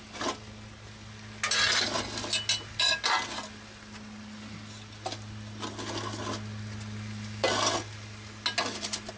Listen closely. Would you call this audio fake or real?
real